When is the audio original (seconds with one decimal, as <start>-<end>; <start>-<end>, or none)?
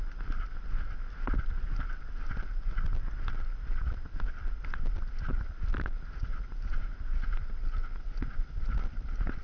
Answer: 0.0-5.3; 6.7-9.4